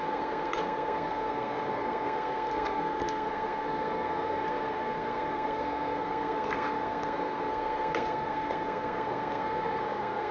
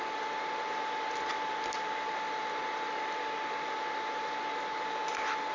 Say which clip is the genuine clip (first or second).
second